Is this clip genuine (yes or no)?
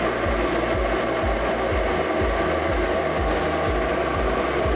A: yes